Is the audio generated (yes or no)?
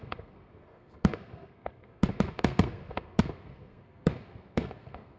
yes